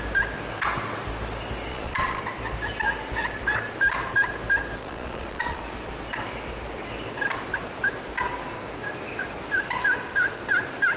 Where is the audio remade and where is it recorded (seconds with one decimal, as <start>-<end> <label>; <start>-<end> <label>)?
0.0-1.7 recorded; 1.7-2.2 remade; 2.2-4.8 recorded; 4.8-5.6 remade; 5.6-11.0 recorded